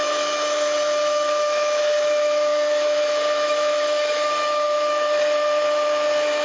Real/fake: fake